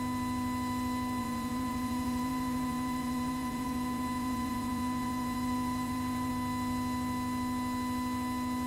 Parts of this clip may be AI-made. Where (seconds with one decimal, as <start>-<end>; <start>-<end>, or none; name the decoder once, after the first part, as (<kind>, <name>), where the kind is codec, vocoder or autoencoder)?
1.2-6.3 (vocoder, Vocos)